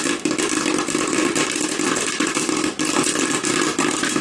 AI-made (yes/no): no